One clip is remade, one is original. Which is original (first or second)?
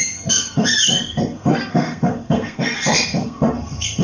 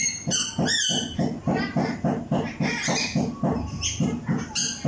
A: second